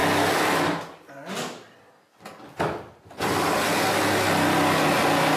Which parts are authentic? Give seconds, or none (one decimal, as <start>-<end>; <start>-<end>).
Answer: 0.0-5.4

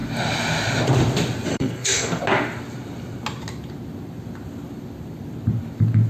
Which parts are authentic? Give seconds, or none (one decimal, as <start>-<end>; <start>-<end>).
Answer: 0.0-1.5; 2.2-6.1

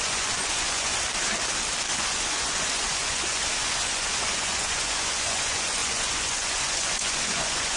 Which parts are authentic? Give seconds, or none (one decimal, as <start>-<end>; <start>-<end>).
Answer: 0.9-2.0

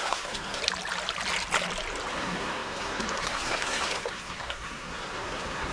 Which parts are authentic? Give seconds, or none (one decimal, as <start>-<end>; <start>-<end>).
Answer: 0.6-2.1

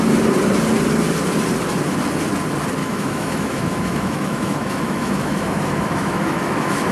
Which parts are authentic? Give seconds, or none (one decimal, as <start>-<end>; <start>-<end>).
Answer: 0.0-2.8

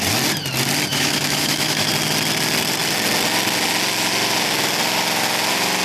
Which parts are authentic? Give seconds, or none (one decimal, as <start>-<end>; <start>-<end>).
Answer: 0.0-0.9; 1.9-5.8

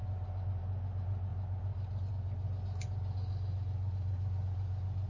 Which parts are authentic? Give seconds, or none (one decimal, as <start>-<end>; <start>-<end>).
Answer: 0.0-5.1